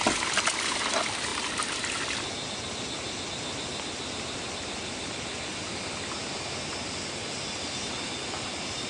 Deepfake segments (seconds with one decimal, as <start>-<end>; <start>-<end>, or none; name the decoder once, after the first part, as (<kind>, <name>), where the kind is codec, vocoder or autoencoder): none